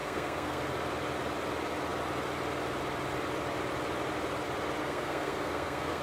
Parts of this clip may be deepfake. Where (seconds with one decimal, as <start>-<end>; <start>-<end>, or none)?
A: 0.0-0.6; 4.8-6.0